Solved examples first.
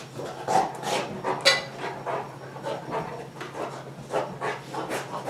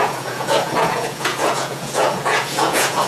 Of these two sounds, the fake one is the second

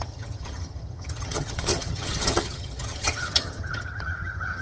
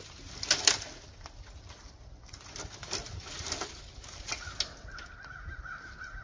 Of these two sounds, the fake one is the first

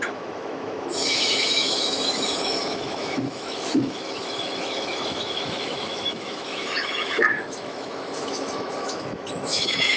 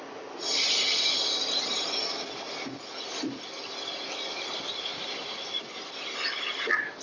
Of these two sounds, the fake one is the first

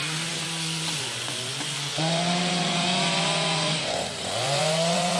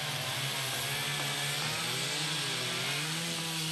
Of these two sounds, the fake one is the first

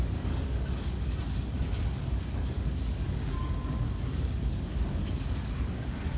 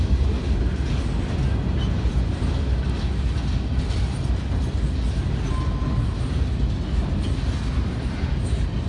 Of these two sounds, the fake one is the first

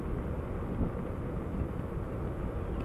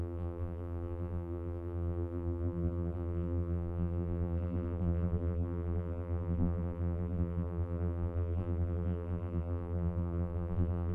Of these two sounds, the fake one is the second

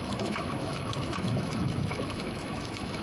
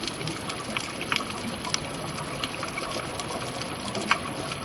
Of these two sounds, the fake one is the first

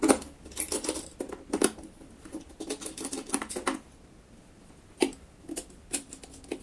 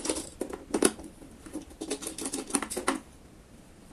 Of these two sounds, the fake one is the second